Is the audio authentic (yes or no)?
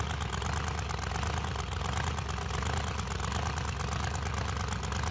yes